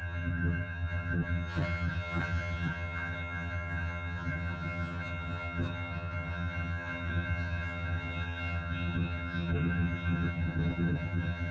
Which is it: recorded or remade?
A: remade